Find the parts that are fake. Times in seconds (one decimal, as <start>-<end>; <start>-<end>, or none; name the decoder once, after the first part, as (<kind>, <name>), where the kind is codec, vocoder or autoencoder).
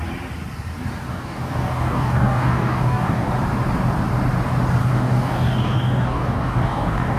1.1-3.3 (codec, DAC); 4.8-7.2